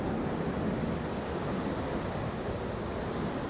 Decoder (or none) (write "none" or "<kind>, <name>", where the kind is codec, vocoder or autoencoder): none